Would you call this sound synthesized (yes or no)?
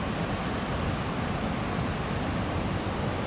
no